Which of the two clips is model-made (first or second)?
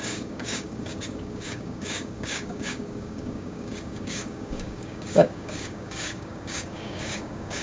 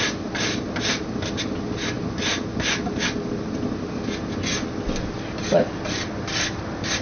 first